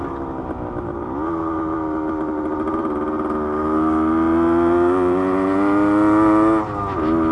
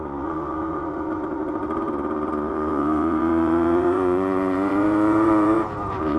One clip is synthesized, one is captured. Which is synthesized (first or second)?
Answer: second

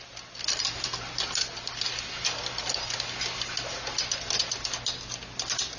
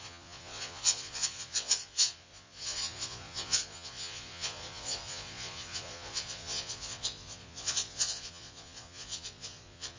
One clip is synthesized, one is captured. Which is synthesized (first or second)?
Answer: second